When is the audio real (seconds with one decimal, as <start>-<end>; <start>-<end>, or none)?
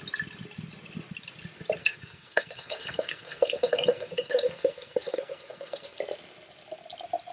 0.0-1.8; 6.0-7.3